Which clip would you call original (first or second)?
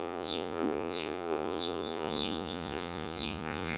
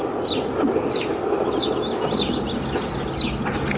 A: second